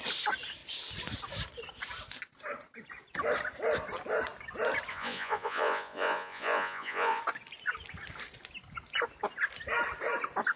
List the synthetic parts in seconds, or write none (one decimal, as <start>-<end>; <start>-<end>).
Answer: 4.9-7.2